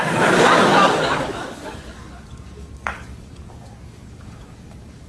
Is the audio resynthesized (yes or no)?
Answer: yes